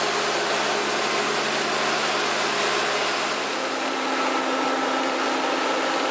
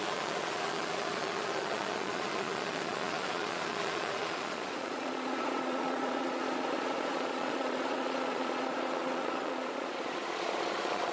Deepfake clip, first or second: second